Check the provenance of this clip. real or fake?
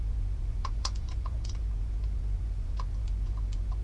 fake